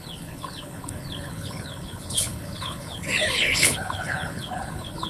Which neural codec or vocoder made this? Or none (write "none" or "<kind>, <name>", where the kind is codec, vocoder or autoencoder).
codec, HILCodec